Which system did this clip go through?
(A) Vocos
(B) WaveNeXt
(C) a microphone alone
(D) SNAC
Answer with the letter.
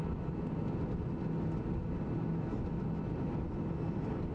C